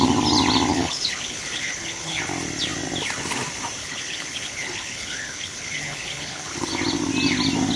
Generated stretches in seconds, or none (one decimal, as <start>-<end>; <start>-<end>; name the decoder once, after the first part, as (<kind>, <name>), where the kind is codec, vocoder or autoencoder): 0.7-2.2 (codec, HILCodec); 3.8-6.7